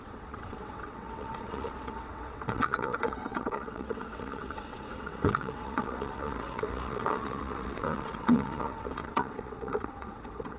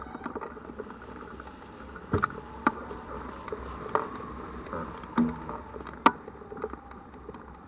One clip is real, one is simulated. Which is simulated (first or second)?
first